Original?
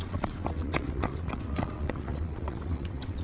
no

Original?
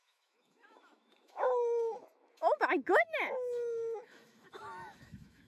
no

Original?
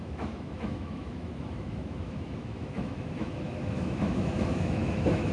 no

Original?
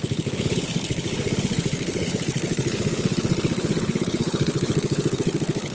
no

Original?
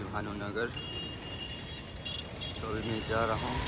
no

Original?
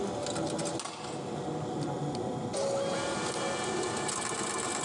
yes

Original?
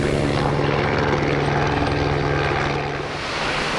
yes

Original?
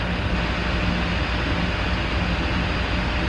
yes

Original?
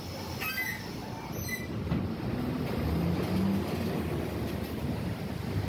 yes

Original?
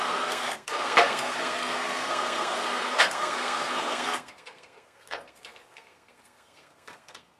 no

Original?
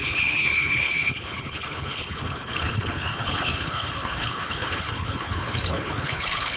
no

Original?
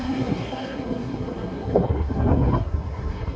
no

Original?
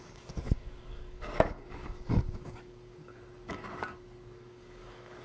no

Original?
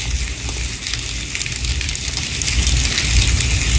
yes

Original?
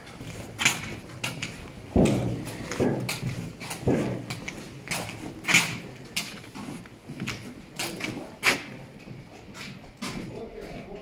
yes